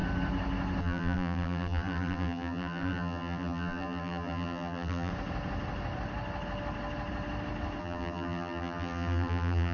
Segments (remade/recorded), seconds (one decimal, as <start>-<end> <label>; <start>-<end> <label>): 0.0-0.8 recorded; 0.8-5.1 remade; 5.1-7.8 recorded; 7.8-9.7 remade